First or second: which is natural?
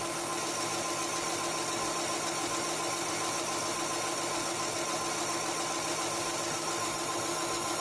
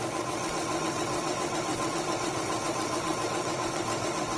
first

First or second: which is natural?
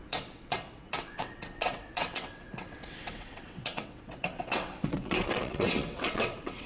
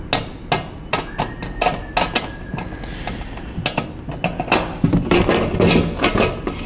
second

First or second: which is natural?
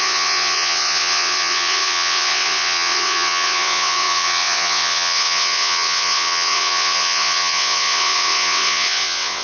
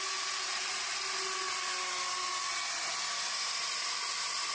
second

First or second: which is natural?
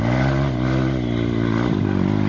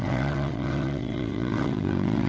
first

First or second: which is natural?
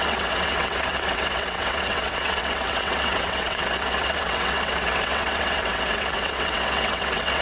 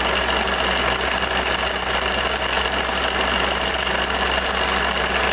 second